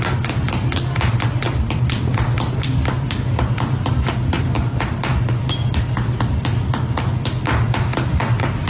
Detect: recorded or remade recorded